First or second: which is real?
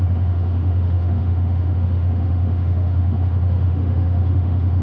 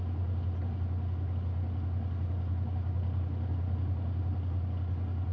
second